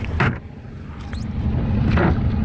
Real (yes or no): yes